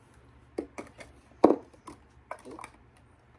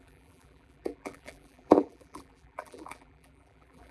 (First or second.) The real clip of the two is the first